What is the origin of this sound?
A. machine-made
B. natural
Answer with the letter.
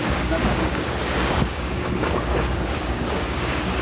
A